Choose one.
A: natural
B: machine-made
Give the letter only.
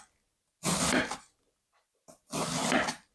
A